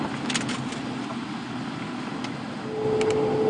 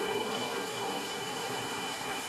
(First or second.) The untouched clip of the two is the first